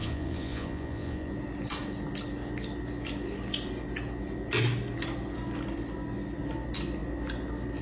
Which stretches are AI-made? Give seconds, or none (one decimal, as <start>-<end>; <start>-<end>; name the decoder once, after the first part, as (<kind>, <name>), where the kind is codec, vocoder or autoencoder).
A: 0.0-1.3 (vocoder, Vocos)